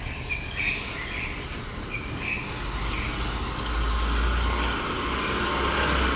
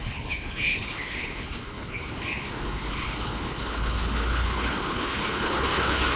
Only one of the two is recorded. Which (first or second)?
first